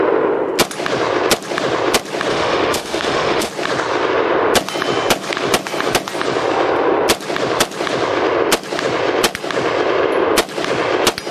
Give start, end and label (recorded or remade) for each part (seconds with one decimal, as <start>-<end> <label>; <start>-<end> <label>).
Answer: 0.0-2.3 recorded; 2.3-3.5 remade; 3.5-11.3 recorded